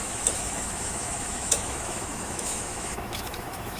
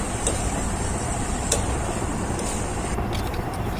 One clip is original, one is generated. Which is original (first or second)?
second